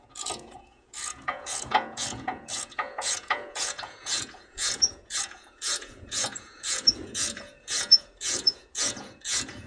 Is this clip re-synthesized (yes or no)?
yes